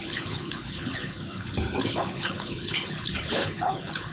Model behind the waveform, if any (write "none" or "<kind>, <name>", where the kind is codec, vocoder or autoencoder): codec, HILCodec